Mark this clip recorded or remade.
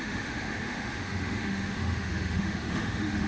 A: remade